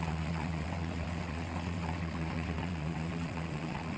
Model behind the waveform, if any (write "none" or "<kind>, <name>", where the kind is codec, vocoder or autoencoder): vocoder, WaveNeXt